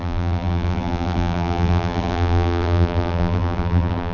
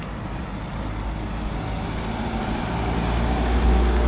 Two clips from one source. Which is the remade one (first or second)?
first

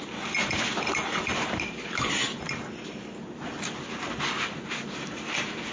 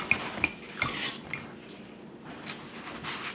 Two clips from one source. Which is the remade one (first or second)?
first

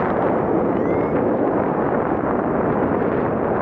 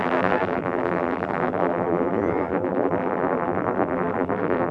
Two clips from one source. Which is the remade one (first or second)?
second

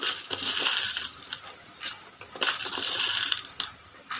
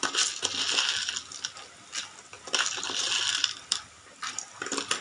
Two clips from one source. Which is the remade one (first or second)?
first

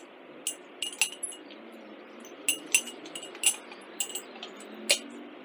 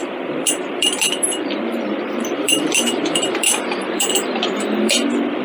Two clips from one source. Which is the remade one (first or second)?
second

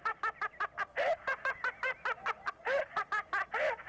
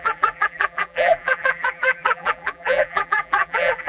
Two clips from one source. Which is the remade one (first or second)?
second